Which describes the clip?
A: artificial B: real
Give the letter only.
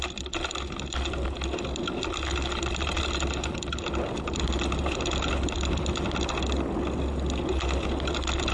B